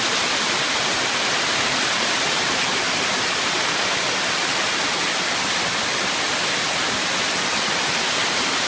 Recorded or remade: recorded